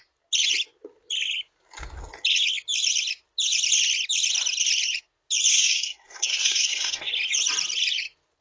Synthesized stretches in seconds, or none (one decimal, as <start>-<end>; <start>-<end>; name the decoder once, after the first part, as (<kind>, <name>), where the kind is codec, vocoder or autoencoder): 5.5-7.1 (codec, SNAC)